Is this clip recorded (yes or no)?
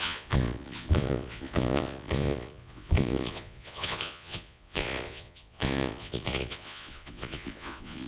no